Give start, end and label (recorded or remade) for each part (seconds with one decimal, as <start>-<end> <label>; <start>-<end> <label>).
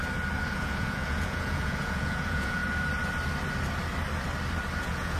0.0-0.5 recorded; 0.5-2.6 remade; 2.6-4.8 recorded; 4.8-5.2 remade